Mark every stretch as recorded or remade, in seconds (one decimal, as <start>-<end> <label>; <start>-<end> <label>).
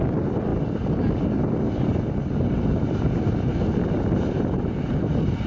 0.0-4.2 recorded; 4.2-4.7 remade; 4.7-5.5 recorded